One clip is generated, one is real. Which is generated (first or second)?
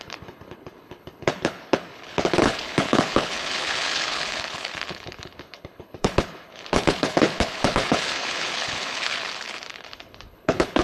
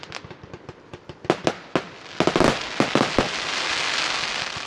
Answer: first